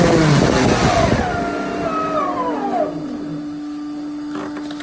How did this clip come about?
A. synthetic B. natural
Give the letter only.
B